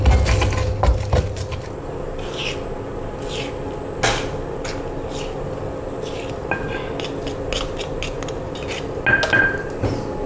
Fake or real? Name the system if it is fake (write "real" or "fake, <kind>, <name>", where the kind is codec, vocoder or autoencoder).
real